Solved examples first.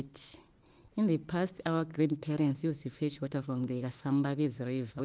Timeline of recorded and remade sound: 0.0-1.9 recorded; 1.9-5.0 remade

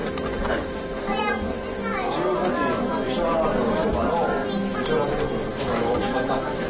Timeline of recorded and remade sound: 0.0-5.5 recorded; 5.5-6.7 remade

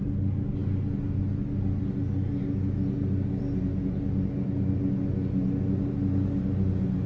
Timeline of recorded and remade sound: 0.0-7.1 recorded

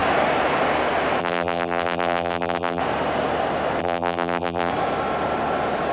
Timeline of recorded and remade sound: 0.0-1.2 recorded; 1.2-2.8 remade; 2.8-3.8 recorded; 3.8-4.7 remade; 4.7-5.9 recorded

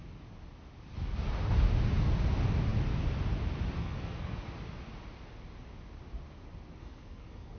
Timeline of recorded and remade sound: 0.0-3.8 recorded; 3.8-4.5 remade; 4.5-6.8 recorded; 6.8-7.6 remade

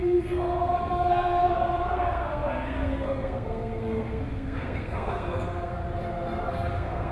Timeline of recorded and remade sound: 0.0-5.8 remade; 5.8-6.4 recorded; 6.4-7.1 remade

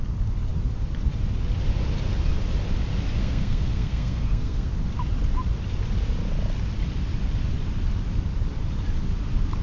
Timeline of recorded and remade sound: 0.0-3.2 recorded; 3.2-4.7 remade; 4.7-9.6 recorded